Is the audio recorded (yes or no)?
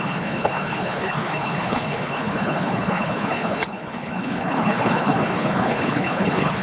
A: no